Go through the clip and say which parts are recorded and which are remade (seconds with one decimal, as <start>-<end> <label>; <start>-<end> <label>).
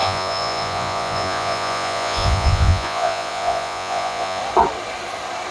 0.0-4.4 remade; 4.4-5.5 recorded